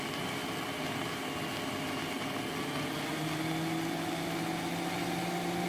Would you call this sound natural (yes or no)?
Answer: yes